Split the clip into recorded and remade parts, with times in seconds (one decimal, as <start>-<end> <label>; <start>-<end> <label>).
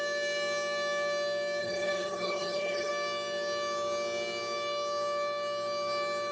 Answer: 0.0-1.6 recorded; 1.6-2.9 remade; 2.9-6.3 recorded